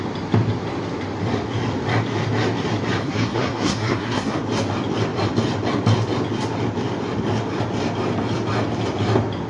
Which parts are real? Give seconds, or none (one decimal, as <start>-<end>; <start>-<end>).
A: 0.0-3.0; 4.4-9.5